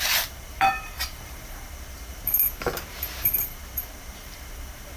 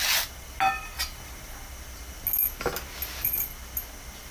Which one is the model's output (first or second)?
first